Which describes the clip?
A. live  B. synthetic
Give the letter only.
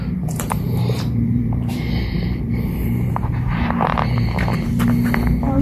B